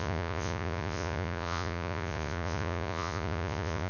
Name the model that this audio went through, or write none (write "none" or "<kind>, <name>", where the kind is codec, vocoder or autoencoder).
vocoder, Vocos